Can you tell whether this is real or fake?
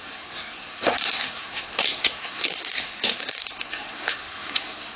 fake